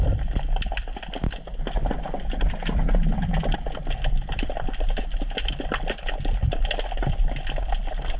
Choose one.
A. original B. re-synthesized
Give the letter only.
A